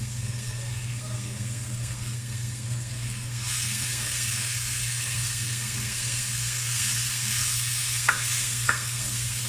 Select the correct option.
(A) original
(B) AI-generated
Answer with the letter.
B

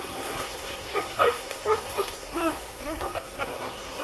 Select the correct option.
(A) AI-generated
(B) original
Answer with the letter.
A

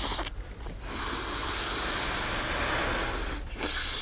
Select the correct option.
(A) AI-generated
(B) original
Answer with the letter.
B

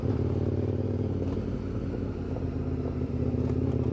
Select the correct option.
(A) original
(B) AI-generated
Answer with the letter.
A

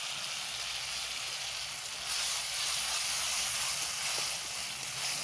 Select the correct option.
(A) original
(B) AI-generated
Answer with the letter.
A